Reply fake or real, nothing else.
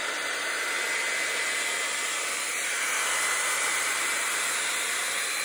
real